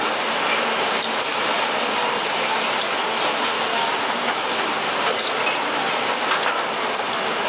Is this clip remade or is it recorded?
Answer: recorded